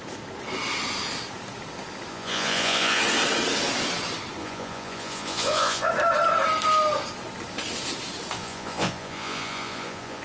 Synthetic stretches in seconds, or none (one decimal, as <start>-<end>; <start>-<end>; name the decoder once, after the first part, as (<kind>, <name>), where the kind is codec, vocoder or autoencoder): 2.1-3.0 (vocoder, Vocos); 4.4-5.9; 8.4-10.2